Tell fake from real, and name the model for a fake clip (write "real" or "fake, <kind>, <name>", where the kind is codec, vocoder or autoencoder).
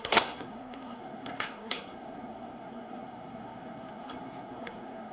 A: fake, codec, SNAC